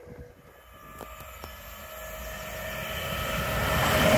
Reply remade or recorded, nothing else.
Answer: recorded